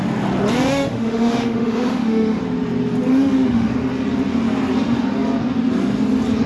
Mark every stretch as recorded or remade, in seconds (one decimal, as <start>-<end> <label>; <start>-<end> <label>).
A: 0.0-0.7 recorded; 0.7-2.4 remade; 2.4-3.1 recorded; 3.1-3.7 remade; 3.7-6.5 recorded